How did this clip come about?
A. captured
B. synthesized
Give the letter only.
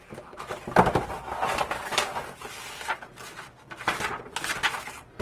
A